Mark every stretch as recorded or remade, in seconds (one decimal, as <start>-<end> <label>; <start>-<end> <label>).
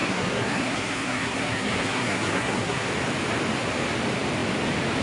0.0-2.9 remade; 2.9-5.0 recorded